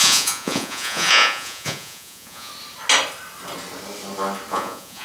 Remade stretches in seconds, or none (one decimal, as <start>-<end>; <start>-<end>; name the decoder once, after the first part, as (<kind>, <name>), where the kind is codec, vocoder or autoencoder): 0.0-2.5 (vocoder, Vocos); 4.5-5.0